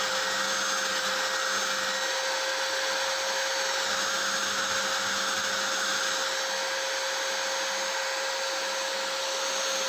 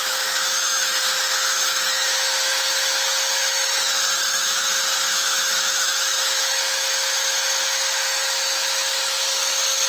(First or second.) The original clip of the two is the first